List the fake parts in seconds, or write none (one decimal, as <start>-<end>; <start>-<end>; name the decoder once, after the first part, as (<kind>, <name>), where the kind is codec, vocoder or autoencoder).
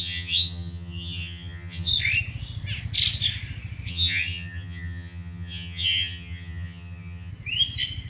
0.0-1.9 (vocoder, HiFi-GAN); 3.9-7.3